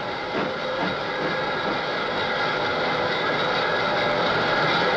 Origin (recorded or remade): recorded